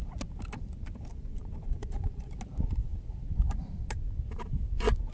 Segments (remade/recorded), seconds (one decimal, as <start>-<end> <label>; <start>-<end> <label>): 0.0-1.1 recorded; 1.1-2.3 remade; 2.3-5.1 recorded